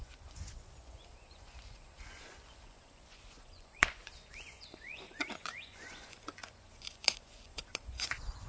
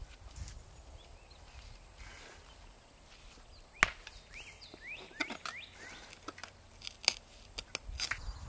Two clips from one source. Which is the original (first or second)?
second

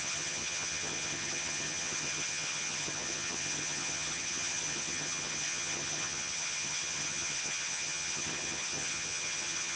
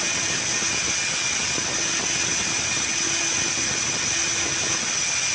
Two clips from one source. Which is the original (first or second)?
second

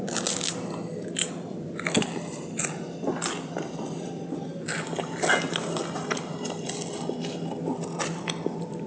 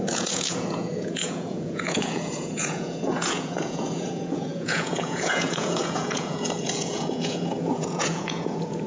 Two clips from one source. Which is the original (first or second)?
first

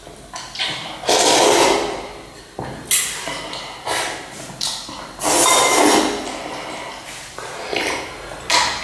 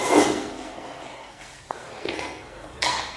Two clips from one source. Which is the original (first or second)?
first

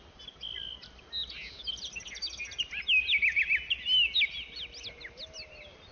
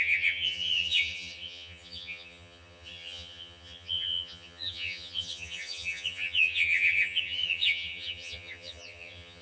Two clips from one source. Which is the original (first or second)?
first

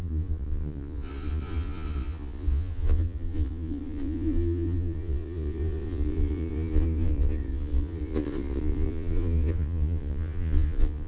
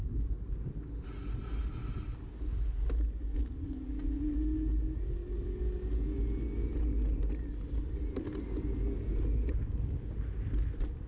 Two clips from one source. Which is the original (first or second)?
second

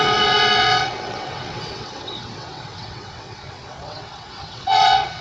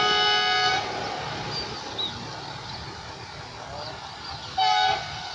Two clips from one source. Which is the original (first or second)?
second